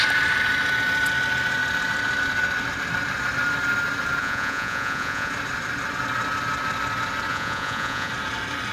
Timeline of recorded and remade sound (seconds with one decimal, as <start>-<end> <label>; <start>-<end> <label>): 0.0-4.2 recorded; 4.2-5.3 remade; 5.3-7.3 recorded; 7.3-8.1 remade; 8.1-8.7 recorded